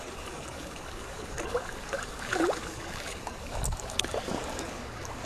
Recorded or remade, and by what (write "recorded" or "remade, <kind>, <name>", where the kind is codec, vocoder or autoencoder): remade, codec, DAC